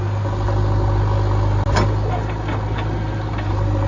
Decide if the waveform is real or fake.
real